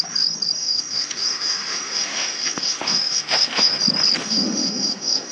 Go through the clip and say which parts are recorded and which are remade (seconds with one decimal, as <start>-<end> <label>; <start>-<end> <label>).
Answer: 0.0-0.6 recorded; 0.6-3.8 remade; 3.8-4.2 recorded; 4.2-5.3 remade